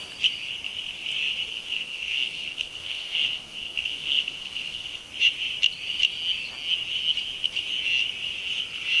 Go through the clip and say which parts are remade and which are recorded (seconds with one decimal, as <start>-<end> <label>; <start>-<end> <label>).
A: 0.0-1.5 recorded; 1.5-5.1 remade; 5.1-9.0 recorded